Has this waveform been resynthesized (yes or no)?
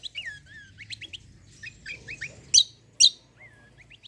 no